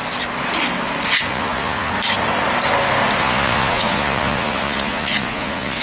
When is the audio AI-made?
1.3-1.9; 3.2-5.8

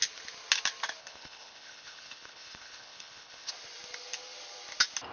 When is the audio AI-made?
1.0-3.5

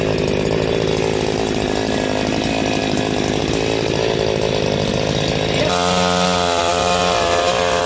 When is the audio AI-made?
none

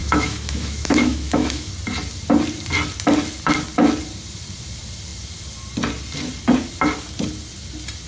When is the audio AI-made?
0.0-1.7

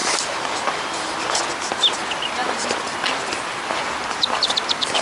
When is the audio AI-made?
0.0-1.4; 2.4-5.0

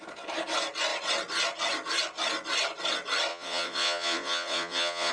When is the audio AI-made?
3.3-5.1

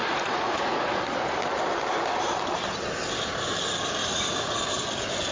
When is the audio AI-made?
0.0-1.4; 4.0-4.6

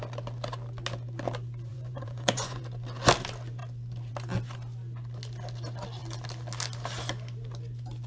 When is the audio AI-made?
1.7-2.6